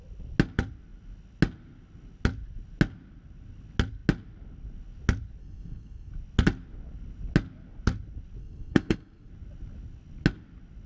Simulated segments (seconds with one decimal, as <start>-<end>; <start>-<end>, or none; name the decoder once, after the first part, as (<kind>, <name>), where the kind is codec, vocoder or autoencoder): 5.4-6.1 (codec, SNAC); 8.4-9.3